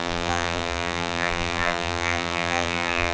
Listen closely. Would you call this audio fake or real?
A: fake